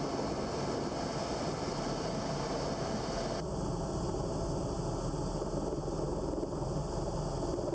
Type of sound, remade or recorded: recorded